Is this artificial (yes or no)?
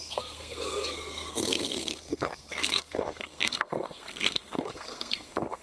yes